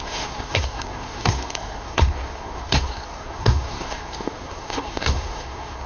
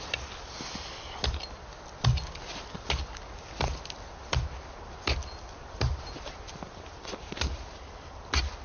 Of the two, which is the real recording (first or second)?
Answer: second